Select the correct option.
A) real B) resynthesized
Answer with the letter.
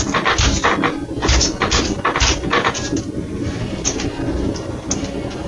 A